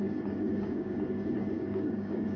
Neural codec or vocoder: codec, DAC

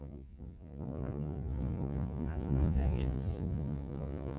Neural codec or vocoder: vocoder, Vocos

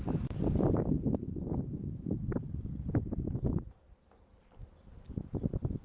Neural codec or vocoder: none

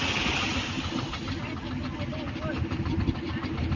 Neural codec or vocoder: none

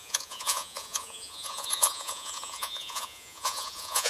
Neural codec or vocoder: vocoder, Vocos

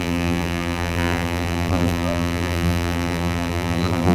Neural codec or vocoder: vocoder, BigVGAN v2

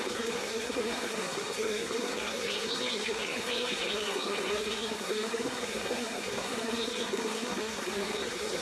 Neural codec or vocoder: codec, SNAC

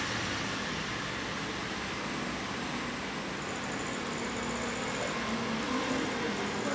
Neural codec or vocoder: none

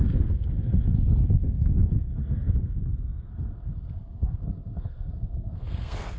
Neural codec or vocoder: codec, SNAC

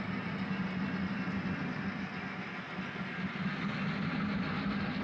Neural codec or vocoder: none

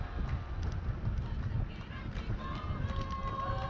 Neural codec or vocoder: none